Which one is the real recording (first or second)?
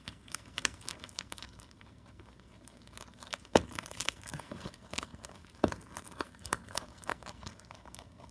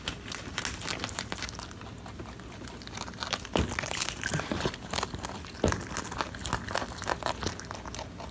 second